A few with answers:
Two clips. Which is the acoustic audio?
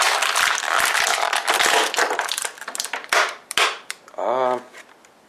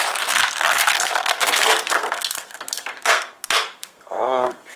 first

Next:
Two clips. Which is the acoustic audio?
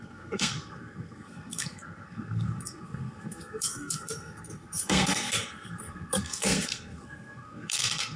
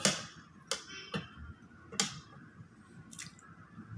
second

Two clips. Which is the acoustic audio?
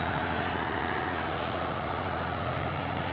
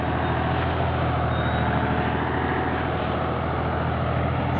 second